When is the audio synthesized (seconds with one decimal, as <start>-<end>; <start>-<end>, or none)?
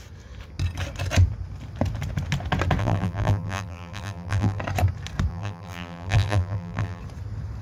2.8-4.6; 5.3-7.0